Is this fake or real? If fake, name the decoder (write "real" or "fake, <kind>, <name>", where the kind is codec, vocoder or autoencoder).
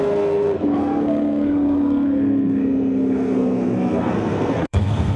fake, codec, SNAC